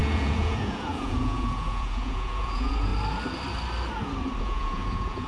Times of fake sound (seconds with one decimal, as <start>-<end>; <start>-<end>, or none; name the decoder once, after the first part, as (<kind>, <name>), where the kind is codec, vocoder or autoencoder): 0.0-2.9 (vocoder, Vocos); 4.4-5.3